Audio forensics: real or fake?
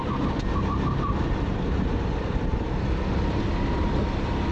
real